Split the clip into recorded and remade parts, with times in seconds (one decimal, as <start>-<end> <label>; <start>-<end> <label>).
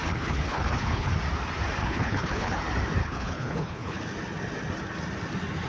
0.0-1.1 remade; 1.1-1.8 recorded; 1.8-2.6 remade; 2.6-3.0 recorded; 3.0-4.0 remade; 4.0-5.7 recorded